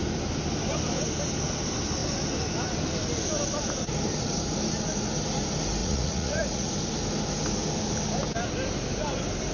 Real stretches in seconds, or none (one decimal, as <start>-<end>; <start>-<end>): 0.0-5.8; 6.7-9.5